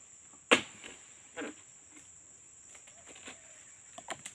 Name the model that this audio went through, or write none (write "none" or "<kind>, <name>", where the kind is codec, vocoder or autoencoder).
none